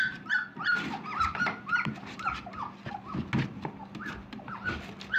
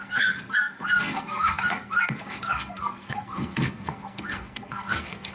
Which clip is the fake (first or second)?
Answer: second